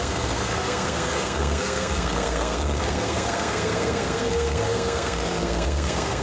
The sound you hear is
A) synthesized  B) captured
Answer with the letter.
A